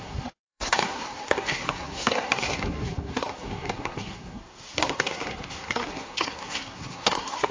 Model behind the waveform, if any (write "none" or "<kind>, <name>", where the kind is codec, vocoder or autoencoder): codec, SNAC